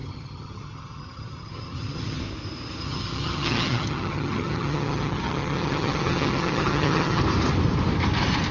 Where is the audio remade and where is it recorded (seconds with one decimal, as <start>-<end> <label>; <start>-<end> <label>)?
0.0-2.2 remade; 2.2-2.8 recorded; 2.8-7.2 remade; 7.2-8.5 recorded